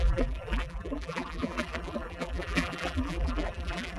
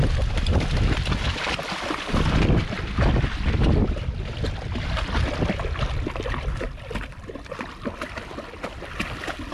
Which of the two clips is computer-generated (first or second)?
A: first